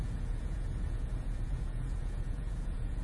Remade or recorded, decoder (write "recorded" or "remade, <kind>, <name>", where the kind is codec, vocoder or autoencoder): remade, vocoder, Vocos